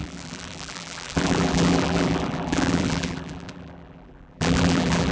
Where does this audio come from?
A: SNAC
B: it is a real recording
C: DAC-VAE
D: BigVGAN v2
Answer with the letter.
D